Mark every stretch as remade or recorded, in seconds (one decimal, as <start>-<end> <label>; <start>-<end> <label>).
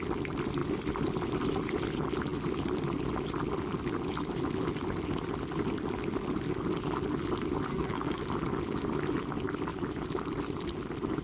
0.0-7.7 recorded; 7.7-8.2 remade; 8.2-11.2 recorded